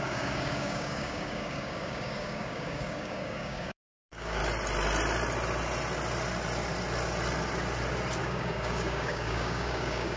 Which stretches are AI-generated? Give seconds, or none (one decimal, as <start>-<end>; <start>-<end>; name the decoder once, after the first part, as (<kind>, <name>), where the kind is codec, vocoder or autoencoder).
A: 0.0-4.4 (codec, DAC); 8.2-10.2